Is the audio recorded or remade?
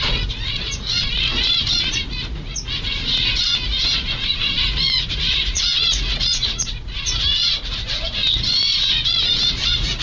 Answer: remade